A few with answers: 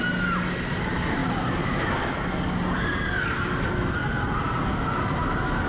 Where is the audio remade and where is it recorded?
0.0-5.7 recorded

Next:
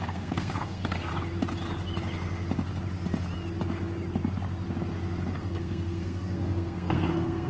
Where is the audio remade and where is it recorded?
0.0-1.1 remade; 1.1-5.4 recorded; 5.4-7.5 remade

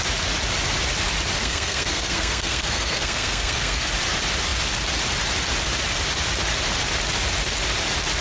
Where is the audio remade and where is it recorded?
0.0-1.4 recorded; 1.4-3.9 remade; 3.9-8.2 recorded

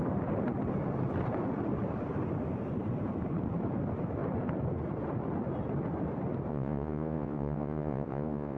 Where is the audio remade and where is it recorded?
0.0-6.5 recorded; 6.5-8.6 remade